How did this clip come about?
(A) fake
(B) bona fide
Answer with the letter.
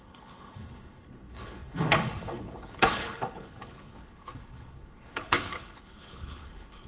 A